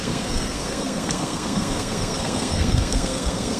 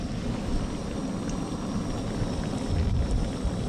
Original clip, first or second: second